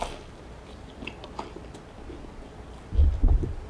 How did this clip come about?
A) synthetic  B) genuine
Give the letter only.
B